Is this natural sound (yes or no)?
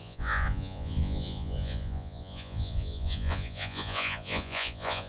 no